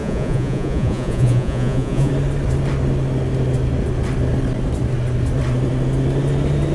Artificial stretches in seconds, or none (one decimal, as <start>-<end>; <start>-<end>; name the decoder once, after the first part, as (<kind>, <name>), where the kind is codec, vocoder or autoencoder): 0.0-2.1 (vocoder, Vocos)